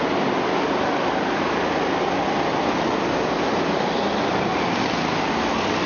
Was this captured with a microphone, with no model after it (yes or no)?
yes